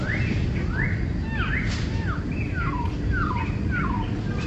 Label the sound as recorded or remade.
recorded